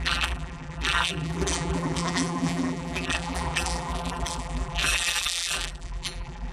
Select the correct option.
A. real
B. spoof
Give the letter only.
B